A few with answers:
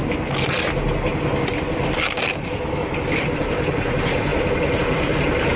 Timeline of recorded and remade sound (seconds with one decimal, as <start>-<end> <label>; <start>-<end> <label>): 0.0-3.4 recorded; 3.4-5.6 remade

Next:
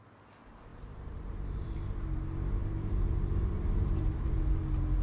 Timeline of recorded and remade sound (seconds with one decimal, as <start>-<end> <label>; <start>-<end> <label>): 0.0-0.7 recorded; 0.7-1.9 remade; 1.9-2.6 recorded; 2.6-4.5 remade; 4.5-5.0 recorded

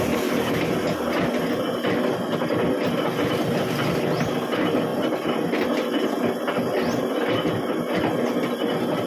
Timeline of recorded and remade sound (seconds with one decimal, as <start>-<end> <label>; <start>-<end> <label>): 0.0-9.1 recorded

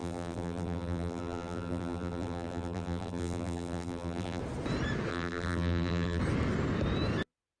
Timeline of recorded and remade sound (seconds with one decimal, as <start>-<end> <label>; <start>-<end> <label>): 0.0-4.4 remade; 4.4-5.1 recorded; 5.1-6.2 remade; 6.2-7.6 recorded